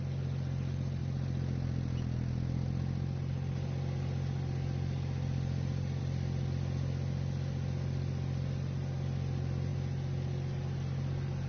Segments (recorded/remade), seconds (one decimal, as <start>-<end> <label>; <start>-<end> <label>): 0.0-11.5 recorded